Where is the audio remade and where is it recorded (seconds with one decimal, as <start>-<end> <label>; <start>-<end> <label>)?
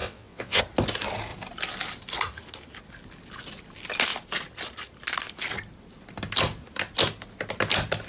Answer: 0.0-0.6 remade; 0.6-8.1 recorded